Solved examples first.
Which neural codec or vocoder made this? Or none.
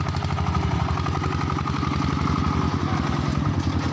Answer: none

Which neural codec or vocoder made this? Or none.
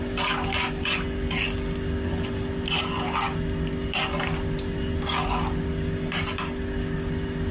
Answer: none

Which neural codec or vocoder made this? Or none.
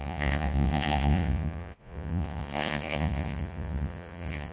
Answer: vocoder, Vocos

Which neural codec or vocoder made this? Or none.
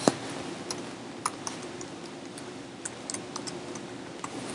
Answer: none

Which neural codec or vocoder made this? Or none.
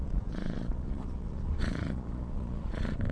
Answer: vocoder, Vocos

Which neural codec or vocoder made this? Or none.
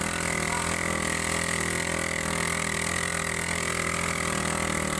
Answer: none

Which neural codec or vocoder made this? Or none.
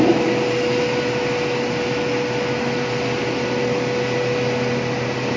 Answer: none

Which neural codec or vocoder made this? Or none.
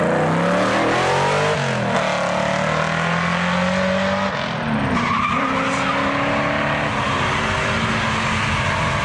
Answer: none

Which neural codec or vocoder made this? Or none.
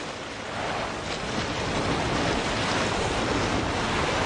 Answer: none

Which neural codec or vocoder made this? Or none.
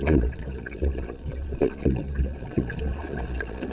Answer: vocoder, Vocos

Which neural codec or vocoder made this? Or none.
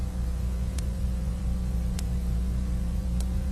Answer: vocoder, Vocos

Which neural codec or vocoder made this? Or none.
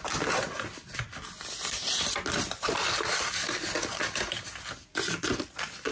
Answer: none